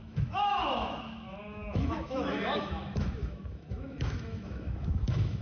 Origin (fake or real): fake